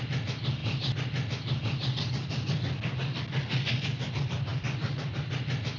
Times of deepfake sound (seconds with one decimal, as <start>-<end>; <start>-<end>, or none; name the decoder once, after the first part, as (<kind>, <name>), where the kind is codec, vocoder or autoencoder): none